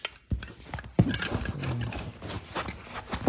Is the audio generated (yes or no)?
no